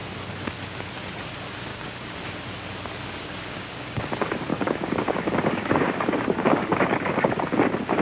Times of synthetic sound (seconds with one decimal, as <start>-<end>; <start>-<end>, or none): 1.7-2.2; 3.4-4.0; 4.5-7.3